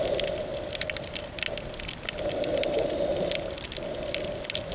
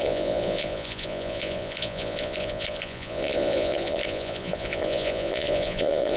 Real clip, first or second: first